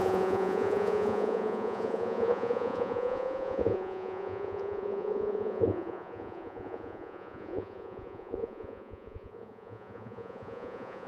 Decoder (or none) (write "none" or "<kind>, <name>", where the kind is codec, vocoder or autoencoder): vocoder, Vocos